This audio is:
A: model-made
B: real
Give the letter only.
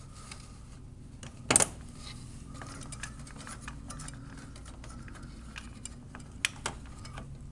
B